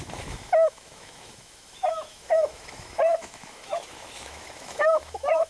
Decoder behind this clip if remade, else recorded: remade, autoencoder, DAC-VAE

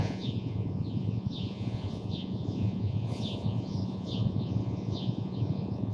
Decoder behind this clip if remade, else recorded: remade, vocoder, Vocos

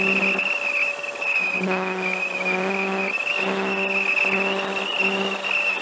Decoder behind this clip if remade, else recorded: recorded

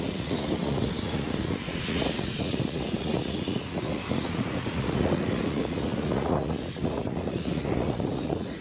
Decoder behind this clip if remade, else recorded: remade, vocoder, Vocos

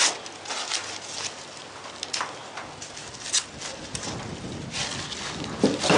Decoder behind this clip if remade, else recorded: recorded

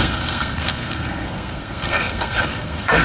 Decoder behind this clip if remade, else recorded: remade, codec, SNAC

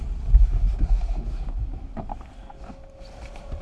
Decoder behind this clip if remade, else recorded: recorded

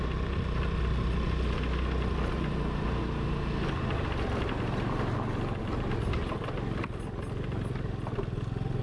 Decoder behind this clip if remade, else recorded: recorded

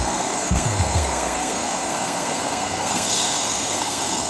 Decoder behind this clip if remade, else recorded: remade, codec, SNAC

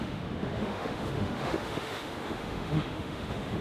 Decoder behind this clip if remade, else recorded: remade, autoencoder, DAC-VAE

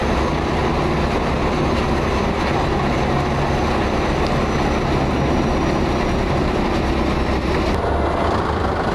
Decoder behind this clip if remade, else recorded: recorded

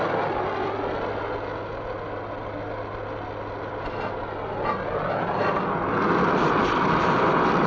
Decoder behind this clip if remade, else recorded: recorded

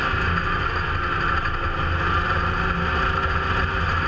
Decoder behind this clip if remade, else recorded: recorded